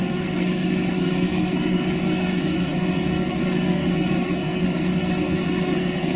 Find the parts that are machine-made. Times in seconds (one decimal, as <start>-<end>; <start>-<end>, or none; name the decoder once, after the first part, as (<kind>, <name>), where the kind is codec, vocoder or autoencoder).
0.0-6.2 (codec, SNAC)